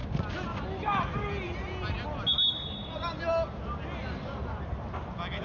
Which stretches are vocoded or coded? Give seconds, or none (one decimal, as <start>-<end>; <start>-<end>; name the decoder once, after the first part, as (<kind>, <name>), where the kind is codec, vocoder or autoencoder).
none

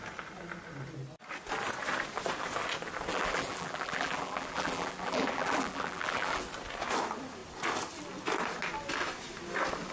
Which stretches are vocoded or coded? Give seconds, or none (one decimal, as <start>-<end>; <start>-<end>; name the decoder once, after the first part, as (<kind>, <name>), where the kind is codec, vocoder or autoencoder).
3.1-6.4 (vocoder, BigVGAN v2)

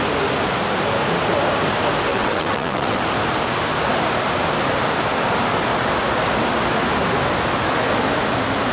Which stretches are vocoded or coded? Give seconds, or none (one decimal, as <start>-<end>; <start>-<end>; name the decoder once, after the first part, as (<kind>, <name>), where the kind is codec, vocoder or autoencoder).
2.1-3.0 (vocoder, WaveNeXt)

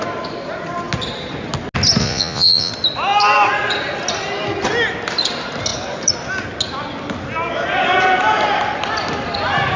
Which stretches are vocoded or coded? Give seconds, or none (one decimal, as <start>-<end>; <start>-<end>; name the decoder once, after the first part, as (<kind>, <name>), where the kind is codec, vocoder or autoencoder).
2.0-2.7 (vocoder, Vocos)

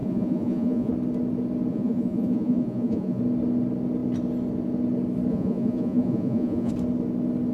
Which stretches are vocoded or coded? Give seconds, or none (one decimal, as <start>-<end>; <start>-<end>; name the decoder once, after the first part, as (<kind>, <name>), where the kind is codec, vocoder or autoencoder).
0.0-0.9 (vocoder, Vocos); 1.7-3.2; 5.3-6.7

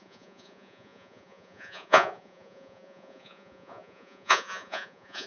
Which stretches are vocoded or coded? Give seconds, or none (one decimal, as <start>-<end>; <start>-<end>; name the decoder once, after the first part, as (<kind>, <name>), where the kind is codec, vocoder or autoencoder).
0.0-5.3 (vocoder, Vocos)

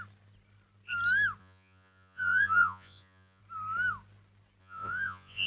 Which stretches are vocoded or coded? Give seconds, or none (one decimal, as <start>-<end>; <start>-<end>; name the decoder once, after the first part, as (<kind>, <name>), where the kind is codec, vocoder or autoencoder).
1.4-3.4 (vocoder, Vocos); 4.6-5.5

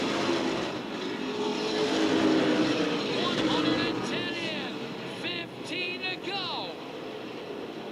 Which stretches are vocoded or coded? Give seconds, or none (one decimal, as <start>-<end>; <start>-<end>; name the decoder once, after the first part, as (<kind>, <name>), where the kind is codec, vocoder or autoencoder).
none